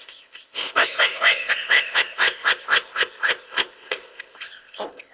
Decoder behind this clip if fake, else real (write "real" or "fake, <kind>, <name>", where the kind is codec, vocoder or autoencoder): fake, codec, ZipCodec